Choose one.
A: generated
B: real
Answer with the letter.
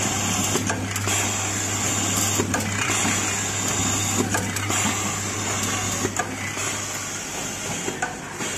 B